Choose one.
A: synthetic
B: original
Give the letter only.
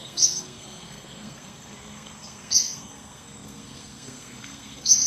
A